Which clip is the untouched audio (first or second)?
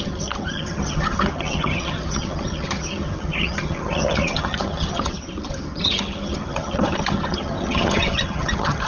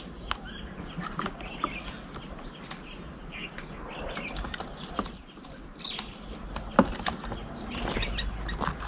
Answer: second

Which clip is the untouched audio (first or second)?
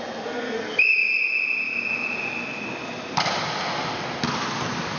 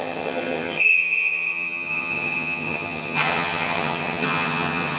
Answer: first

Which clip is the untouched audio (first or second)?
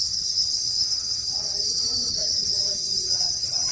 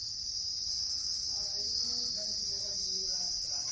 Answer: second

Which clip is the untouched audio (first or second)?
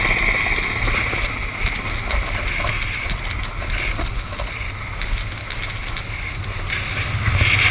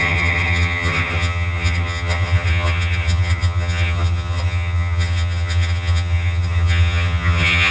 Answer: first